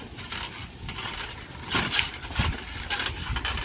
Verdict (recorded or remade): recorded